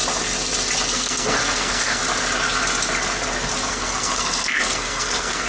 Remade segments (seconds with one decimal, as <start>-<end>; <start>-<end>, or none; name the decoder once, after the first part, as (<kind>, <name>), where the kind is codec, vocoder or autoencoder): 0.9-2.0 (codec, SNAC); 3.7-5.5

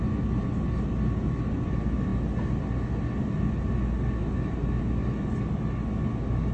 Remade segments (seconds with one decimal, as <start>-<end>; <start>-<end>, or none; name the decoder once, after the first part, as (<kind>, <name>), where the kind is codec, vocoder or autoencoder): none